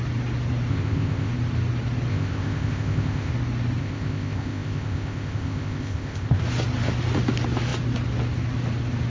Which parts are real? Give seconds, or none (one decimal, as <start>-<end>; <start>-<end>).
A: 0.0-0.7; 1.3-2.1; 3.3-3.8; 6.4-9.1